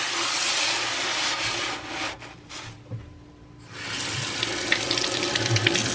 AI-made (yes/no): no